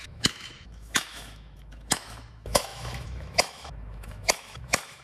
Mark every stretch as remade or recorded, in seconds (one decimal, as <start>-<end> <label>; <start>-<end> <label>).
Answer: 0.0-5.0 remade